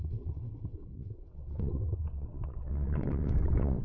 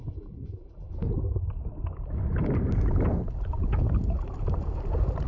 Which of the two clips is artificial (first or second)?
first